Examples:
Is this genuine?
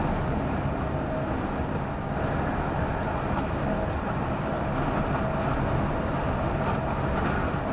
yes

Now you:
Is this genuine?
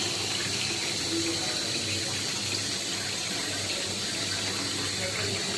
yes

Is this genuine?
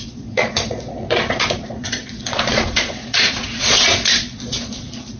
no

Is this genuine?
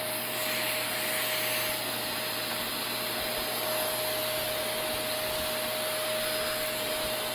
yes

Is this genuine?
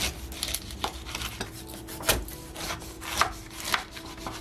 yes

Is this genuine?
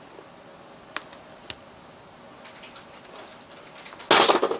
yes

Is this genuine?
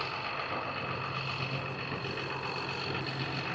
yes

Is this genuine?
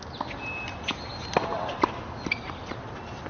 yes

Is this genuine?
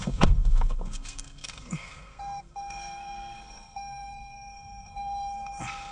no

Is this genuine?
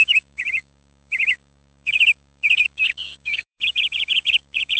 no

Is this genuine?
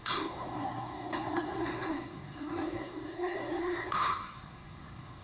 no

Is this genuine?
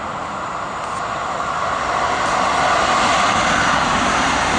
yes